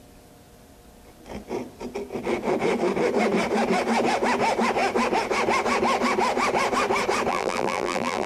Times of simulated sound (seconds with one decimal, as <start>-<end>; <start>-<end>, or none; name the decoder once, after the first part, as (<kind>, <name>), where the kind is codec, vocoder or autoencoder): 7.3-8.3 (vocoder, BigVGAN v2)